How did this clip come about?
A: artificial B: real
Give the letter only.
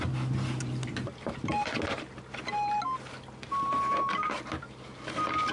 B